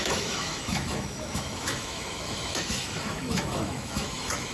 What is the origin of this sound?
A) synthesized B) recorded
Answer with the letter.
A